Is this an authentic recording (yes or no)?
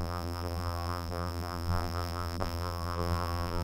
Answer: no